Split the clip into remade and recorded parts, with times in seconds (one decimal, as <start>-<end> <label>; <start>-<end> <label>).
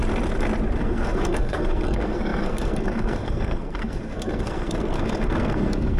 0.0-0.8 recorded; 0.8-6.0 remade